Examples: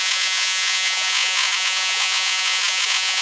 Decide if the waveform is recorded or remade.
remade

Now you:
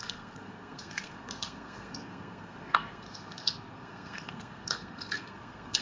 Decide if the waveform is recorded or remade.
remade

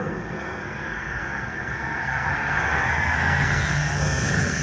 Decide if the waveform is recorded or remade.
remade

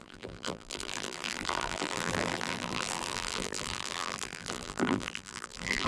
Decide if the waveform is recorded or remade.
remade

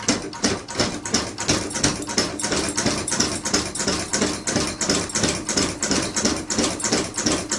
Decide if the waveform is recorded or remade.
recorded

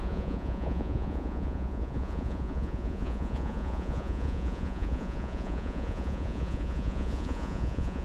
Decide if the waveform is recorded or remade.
remade